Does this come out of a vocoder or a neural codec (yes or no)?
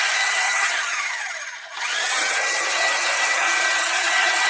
yes